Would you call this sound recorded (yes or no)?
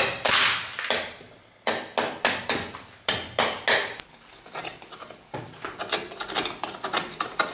yes